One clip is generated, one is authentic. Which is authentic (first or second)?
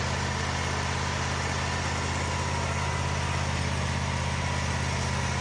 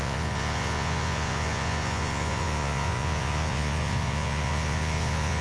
first